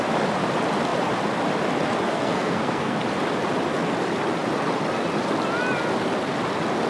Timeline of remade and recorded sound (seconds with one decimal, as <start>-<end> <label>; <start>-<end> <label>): 0.0-2.1 recorded; 2.1-3.0 remade; 3.0-6.9 recorded